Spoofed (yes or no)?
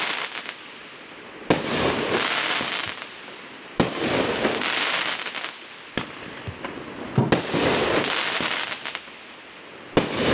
no